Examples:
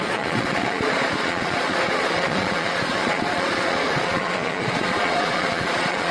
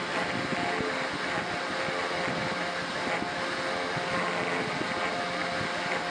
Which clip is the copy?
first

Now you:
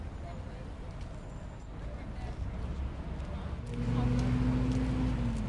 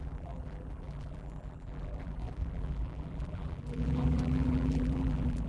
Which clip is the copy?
second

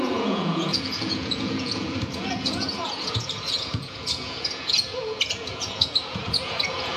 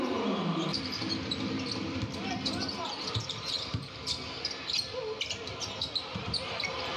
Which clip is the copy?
first